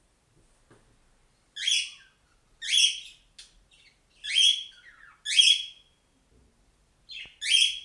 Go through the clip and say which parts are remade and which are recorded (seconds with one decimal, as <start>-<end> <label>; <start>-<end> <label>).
0.0-7.8 recorded